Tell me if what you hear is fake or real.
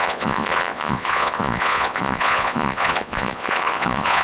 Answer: fake